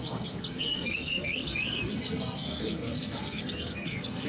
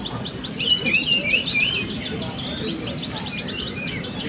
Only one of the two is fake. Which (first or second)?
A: first